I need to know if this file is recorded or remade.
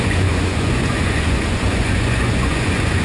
remade